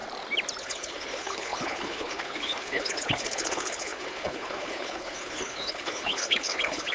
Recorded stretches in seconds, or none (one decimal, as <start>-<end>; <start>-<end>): 0.0-0.6